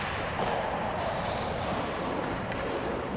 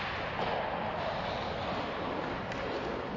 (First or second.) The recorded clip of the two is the second